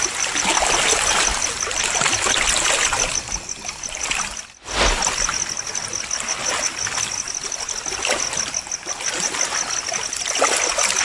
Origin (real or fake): real